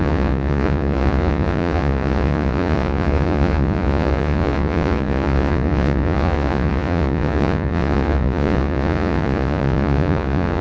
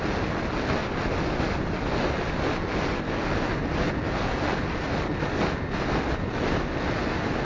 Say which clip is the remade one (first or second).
first